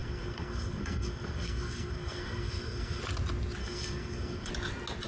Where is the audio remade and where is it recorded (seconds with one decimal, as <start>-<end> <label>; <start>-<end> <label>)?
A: 0.0-3.0 remade; 3.0-3.6 recorded; 3.6-4.5 remade; 4.5-5.1 recorded